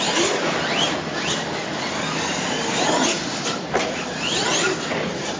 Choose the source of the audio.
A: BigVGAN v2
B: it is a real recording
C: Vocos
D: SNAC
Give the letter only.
B